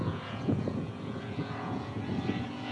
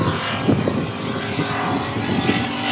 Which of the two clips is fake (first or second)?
first